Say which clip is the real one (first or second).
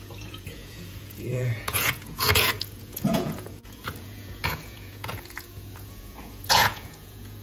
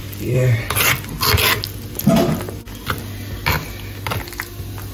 second